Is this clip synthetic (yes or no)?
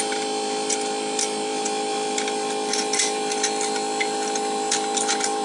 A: yes